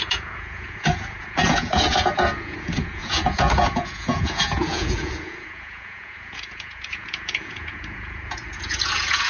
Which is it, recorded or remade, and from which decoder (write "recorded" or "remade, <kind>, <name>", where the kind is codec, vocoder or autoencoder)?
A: remade, vocoder, Vocos